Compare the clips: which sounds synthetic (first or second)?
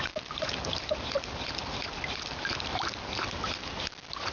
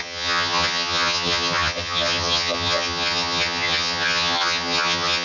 second